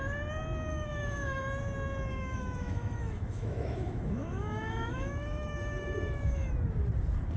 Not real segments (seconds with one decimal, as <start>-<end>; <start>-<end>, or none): 0.7-1.4; 2.1-6.5